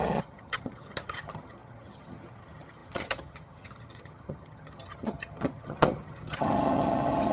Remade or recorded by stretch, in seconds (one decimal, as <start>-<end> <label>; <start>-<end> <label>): 0.0-7.3 remade